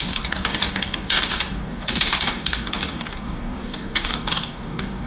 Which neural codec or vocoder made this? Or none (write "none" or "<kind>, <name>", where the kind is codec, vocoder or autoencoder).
codec, DAC